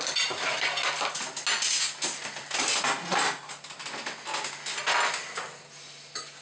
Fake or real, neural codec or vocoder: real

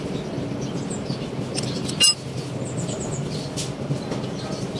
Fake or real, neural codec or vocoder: real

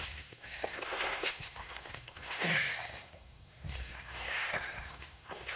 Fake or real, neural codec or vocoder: fake, codec, SNAC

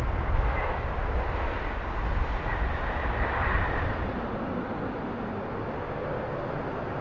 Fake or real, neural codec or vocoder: real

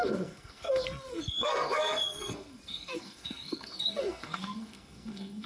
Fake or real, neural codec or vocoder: fake, codec, SNAC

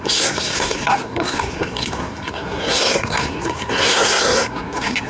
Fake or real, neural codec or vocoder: fake, codec, SNAC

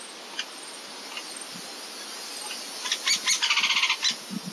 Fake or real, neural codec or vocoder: real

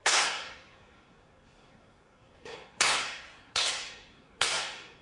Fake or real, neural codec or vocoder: fake, codec, SNAC